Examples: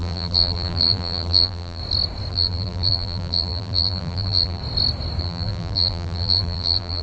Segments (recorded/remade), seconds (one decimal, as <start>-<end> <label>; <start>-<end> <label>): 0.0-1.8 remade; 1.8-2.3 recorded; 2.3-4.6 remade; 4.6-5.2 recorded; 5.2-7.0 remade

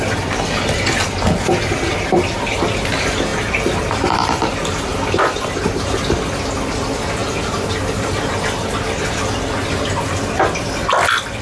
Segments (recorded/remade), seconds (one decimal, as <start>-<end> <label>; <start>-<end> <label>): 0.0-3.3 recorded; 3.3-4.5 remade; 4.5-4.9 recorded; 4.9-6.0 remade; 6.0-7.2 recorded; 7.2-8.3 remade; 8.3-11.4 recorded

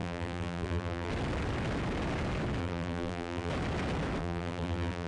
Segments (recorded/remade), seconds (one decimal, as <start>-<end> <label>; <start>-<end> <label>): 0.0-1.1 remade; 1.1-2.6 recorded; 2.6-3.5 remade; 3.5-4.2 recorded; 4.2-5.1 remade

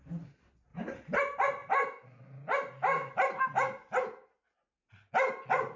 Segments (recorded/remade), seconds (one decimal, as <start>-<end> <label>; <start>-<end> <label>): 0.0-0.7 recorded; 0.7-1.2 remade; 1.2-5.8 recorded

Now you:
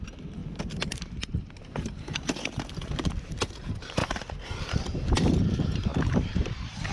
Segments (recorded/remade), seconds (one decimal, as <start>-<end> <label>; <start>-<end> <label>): 0.0-4.0 remade; 4.0-4.7 recorded; 4.7-6.9 remade

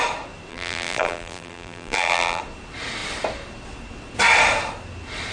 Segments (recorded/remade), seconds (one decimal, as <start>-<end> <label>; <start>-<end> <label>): 0.0-0.5 recorded; 0.5-2.4 remade; 2.4-5.3 recorded

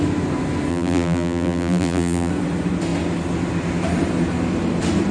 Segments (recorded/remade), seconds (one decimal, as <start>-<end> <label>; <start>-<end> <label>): 0.0-0.7 recorded; 0.7-2.3 remade; 2.3-5.1 recorded

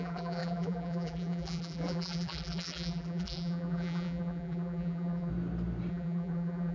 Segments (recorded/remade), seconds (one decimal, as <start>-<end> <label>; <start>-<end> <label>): 0.0-5.3 remade; 5.3-5.9 recorded; 5.9-6.7 remade